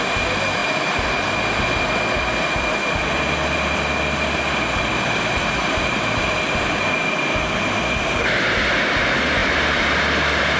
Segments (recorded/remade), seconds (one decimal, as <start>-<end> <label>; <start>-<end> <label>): 0.0-4.9 recorded; 4.9-6.7 remade; 6.7-9.4 recorded; 9.4-10.6 remade